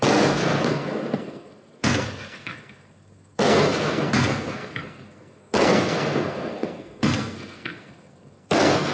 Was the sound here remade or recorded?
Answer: remade